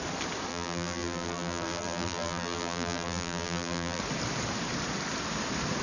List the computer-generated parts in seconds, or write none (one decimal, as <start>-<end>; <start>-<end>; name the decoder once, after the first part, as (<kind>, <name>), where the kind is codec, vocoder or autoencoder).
0.5-4.0 (vocoder, BigVGAN v2)